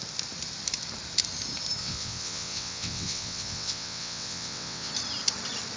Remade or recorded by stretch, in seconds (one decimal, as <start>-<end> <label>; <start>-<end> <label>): 0.0-1.8 recorded; 1.8-4.9 remade; 4.9-5.8 recorded